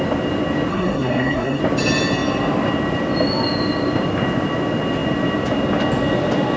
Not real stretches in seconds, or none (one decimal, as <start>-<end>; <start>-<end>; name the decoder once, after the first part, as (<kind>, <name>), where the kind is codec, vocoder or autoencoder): 0.7-1.6 (codec, SNAC)